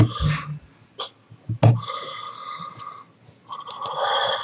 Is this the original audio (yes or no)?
yes